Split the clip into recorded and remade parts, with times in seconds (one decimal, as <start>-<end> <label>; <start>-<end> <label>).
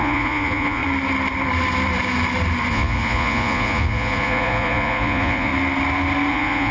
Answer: 0.0-0.8 remade; 0.8-2.7 recorded; 2.7-5.5 remade; 5.5-6.3 recorded; 6.3-6.7 remade